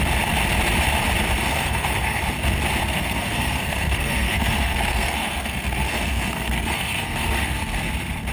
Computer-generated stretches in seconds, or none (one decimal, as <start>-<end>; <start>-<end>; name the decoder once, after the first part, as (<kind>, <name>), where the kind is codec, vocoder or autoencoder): 1.5-2.2 (codec, SNAC); 2.9-7.9